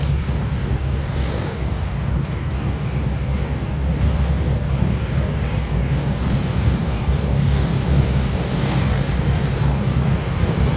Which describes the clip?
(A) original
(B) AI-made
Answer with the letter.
B